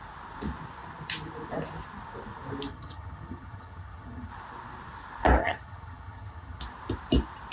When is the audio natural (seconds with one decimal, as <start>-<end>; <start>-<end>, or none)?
0.0-2.7; 4.3-5.4; 6.6-7.5